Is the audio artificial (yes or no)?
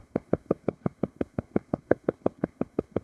yes